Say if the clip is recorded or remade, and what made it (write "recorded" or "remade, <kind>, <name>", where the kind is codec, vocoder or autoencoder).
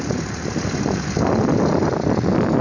remade, vocoder, BigVGAN v2